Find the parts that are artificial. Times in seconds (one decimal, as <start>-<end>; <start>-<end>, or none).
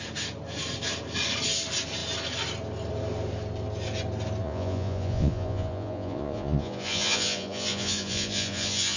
4.4-9.0